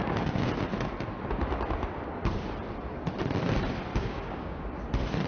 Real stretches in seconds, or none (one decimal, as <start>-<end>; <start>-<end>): 0.5-3.9; 4.6-5.3